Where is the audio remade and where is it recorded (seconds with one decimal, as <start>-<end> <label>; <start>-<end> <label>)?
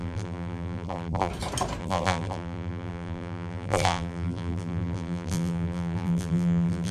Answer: 0.0-1.3 remade; 1.3-1.8 recorded; 1.8-6.9 remade